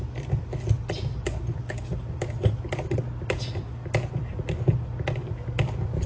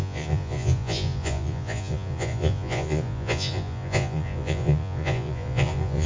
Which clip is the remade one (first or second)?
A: second